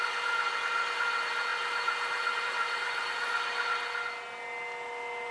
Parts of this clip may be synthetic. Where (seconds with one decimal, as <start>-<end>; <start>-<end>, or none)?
none